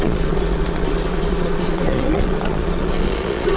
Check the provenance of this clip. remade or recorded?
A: remade